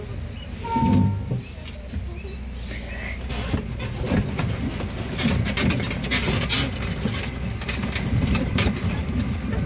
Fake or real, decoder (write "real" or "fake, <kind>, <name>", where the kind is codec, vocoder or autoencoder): real